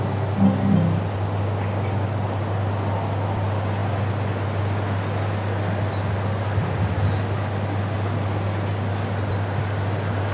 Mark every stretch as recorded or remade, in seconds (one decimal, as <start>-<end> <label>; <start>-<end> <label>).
0.0-10.3 recorded